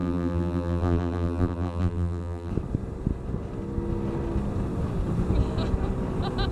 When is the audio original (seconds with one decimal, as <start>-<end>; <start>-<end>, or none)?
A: 2.5-6.5